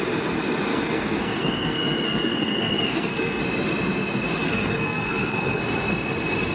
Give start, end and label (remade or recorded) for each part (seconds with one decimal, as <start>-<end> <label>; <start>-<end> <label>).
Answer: 0.0-0.7 recorded; 0.7-3.4 remade; 3.4-4.4 recorded; 4.4-5.6 remade; 5.6-6.5 recorded